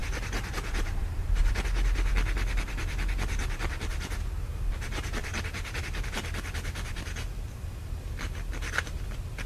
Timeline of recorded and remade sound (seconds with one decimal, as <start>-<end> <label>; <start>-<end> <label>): 0.0-1.5 remade; 1.5-9.5 recorded